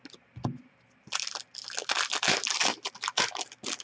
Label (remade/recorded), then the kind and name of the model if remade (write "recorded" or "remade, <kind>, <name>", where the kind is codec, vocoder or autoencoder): recorded